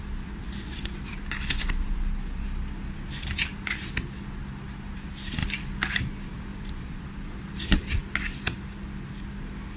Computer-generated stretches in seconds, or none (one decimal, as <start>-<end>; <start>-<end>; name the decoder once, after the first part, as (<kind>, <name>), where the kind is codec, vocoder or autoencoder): 0.0-5.4 (vocoder, BigVGAN v2); 6.0-8.0; 9.3-9.8